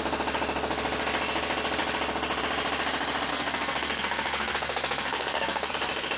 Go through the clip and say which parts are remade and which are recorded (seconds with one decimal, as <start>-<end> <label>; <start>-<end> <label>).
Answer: 0.0-3.3 recorded; 3.3-5.7 remade; 5.7-6.2 recorded